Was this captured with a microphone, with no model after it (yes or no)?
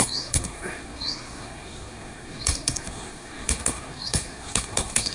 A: no